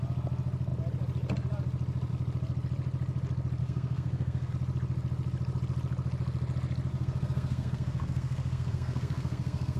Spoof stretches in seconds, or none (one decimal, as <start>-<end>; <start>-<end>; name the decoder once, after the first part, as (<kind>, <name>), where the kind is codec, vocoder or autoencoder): 3.6-4.5 (codec, SNAC); 6.9-9.8